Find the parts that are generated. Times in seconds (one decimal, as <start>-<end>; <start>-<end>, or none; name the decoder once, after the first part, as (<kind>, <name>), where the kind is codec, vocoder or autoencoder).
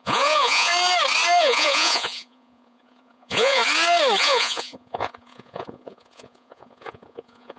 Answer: 0.0-0.7 (vocoder, Vocos); 1.4-3.6; 4.2-7.6